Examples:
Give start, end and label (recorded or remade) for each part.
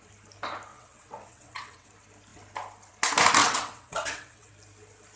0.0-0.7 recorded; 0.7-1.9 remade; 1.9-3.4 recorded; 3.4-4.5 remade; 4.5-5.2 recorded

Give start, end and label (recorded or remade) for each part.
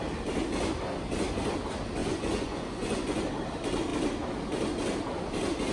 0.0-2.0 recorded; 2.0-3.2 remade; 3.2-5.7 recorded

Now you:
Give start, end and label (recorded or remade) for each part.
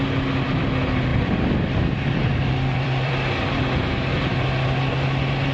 0.0-1.1 recorded; 1.1-3.7 remade; 3.7-5.5 recorded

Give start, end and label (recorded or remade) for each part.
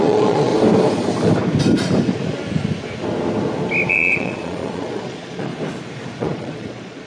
0.0-0.5 remade; 0.5-3.9 recorded; 3.9-5.5 remade; 5.5-6.2 recorded; 6.2-7.1 remade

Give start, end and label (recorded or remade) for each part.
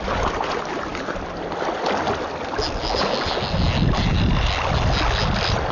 0.0-5.7 recorded